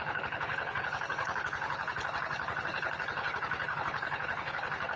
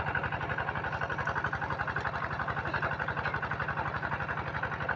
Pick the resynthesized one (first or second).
first